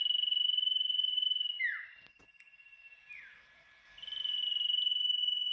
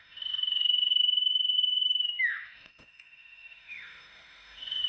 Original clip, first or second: first